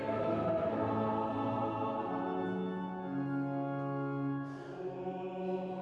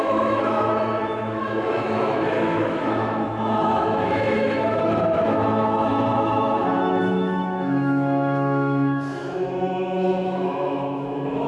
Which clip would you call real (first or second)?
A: first